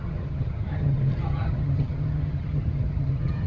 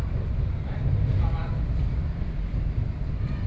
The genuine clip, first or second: second